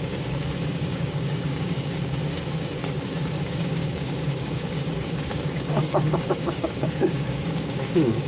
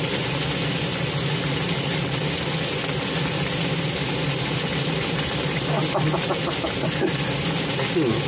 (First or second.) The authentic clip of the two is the second